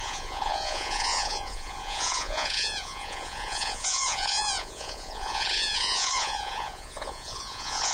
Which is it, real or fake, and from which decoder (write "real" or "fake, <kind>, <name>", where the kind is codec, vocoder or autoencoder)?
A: fake, vocoder, Vocos